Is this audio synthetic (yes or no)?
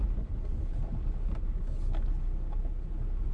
no